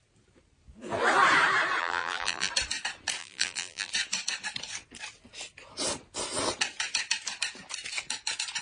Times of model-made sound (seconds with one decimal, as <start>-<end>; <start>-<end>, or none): 1.8-2.5; 3.2-3.9